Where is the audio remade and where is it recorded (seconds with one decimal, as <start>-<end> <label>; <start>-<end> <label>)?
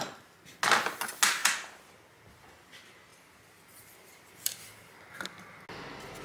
0.0-1.4 recorded; 1.4-2.3 remade; 2.3-3.1 recorded; 3.1-4.6 remade; 4.6-6.2 recorded